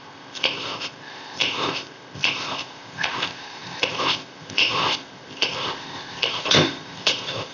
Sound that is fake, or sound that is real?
fake